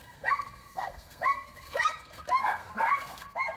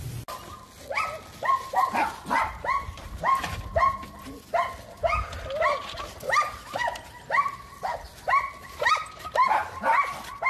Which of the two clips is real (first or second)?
second